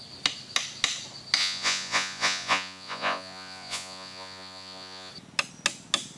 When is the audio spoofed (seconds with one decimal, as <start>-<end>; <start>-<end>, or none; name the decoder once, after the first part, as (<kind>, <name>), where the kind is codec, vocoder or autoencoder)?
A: 1.4-5.1 (vocoder, Vocos)